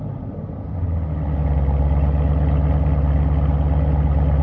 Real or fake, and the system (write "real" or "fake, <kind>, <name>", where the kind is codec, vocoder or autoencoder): real